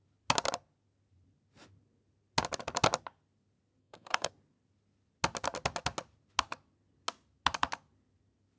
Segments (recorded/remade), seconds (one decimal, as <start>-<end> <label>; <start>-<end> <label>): 0.0-3.8 recorded; 3.8-4.3 remade; 4.3-8.6 recorded